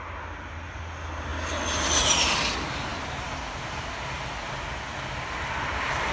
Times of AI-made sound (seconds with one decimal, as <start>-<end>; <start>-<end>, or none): none